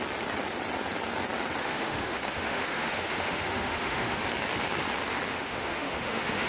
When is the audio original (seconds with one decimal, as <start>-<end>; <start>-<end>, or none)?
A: 0.0-1.6; 4.2-5.3